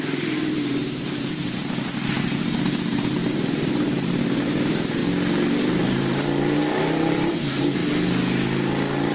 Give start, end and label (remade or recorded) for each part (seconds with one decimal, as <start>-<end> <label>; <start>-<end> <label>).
0.0-5.0 remade; 5.0-5.6 recorded; 5.6-7.8 remade; 7.8-9.1 recorded